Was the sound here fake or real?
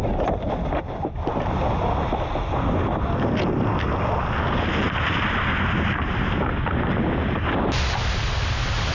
real